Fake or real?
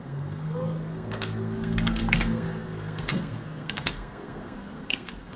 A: fake